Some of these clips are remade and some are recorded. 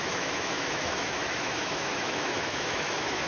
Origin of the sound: remade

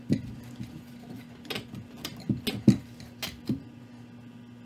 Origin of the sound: recorded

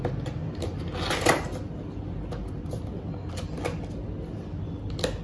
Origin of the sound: recorded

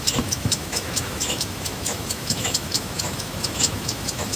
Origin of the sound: remade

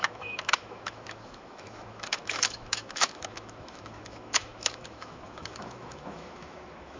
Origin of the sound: remade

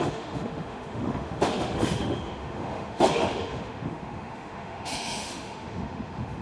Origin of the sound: remade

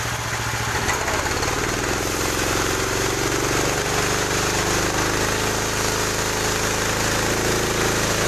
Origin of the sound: recorded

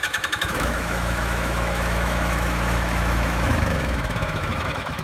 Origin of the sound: remade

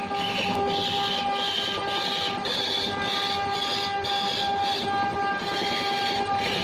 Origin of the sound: recorded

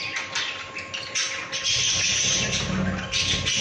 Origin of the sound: recorded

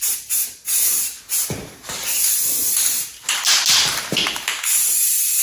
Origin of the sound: recorded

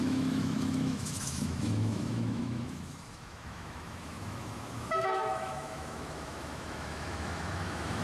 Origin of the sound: remade